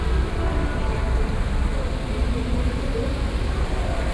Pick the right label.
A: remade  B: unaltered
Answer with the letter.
B